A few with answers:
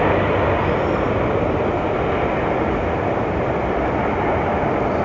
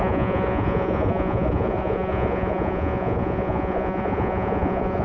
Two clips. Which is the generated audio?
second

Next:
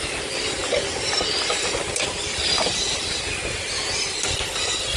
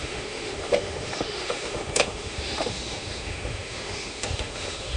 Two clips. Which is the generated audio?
second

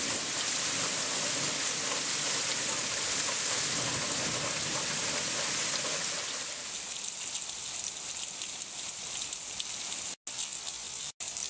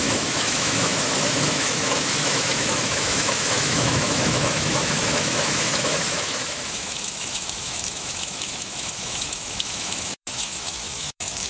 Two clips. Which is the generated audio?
second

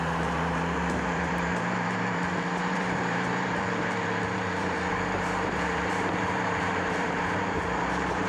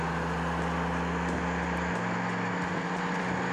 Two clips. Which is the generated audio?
first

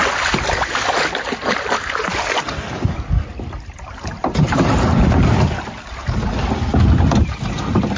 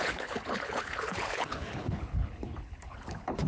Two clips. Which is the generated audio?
second